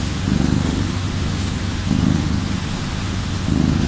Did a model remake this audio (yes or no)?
yes